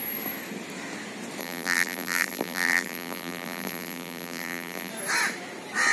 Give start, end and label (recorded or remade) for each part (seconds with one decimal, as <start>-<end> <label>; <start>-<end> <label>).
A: 0.0-1.4 recorded; 1.4-4.9 remade; 4.9-5.9 recorded